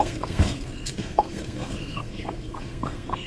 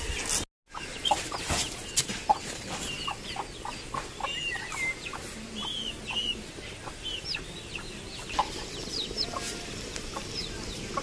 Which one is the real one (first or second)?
second